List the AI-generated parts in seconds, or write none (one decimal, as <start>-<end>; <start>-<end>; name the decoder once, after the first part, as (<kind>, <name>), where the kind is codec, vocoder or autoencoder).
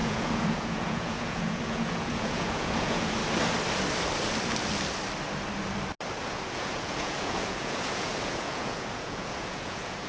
0.0-3.2 (vocoder, Vocos); 6.2-10.1